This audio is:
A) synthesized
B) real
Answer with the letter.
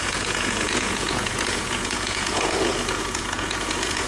A